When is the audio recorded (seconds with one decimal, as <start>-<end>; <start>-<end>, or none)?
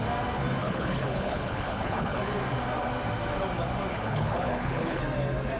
0.0-0.6; 2.2-3.9; 5.0-5.6